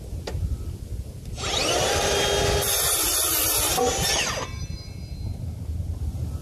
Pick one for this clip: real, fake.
real